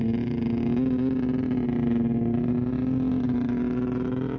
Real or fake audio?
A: real